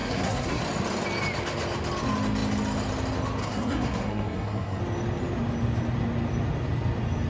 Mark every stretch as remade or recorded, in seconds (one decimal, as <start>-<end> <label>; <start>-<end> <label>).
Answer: 0.0-0.6 remade; 0.6-3.4 recorded; 3.4-4.8 remade; 4.8-7.3 recorded